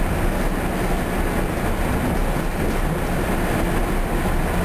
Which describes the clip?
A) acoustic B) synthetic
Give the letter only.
A